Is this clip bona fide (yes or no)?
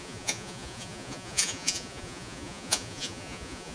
no